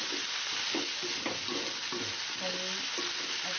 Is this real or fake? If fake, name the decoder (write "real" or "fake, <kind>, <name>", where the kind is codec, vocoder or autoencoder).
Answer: real